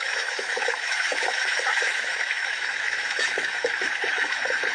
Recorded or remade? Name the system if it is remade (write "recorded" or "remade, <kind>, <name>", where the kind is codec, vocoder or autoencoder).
remade, autoencoder, DAC-VAE